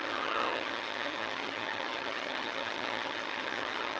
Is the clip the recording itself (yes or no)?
no